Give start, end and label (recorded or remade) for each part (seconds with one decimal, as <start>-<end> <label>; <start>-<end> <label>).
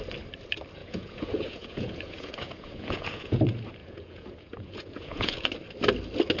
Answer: 0.0-0.8 recorded; 0.8-3.4 remade; 3.4-3.8 recorded; 3.8-5.5 remade; 5.5-6.4 recorded